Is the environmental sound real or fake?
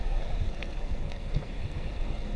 fake